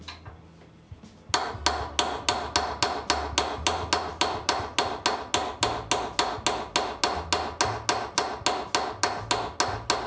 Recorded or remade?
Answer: recorded